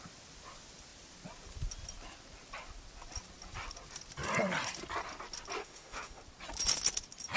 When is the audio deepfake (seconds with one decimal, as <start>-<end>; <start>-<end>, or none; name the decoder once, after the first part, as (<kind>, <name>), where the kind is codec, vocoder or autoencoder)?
5.6-6.2 (autoencoder, DAC-VAE)